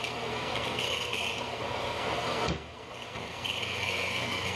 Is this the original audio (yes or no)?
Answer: no